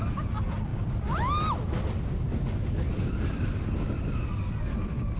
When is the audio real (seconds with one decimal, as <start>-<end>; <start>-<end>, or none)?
0.0-5.2